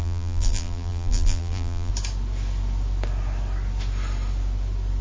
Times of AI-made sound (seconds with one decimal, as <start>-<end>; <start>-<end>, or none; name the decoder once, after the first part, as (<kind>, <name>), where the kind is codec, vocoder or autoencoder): 0.0-1.9 (vocoder, BigVGAN v2)